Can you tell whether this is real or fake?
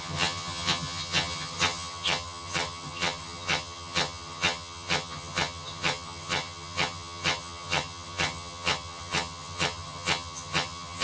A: fake